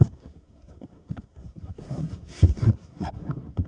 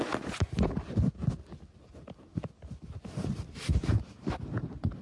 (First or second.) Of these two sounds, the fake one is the first